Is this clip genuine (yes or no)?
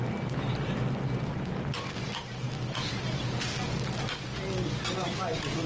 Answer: yes